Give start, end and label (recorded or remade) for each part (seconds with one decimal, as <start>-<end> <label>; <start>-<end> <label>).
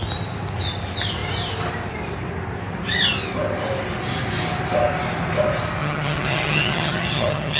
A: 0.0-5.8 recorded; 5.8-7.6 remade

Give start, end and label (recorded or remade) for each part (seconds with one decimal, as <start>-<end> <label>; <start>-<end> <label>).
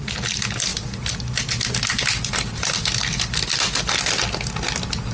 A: 0.0-5.1 recorded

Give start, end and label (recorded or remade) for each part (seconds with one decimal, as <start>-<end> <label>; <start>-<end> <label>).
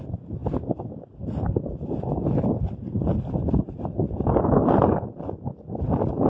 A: 0.0-6.3 recorded